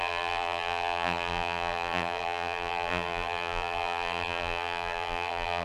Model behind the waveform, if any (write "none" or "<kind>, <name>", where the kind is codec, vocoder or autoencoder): vocoder, BigVGAN v2